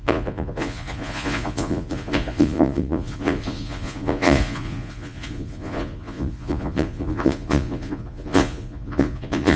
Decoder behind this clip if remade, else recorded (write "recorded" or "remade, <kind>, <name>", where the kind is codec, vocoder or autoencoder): remade, vocoder, Vocos